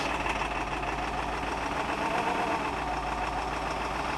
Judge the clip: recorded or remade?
recorded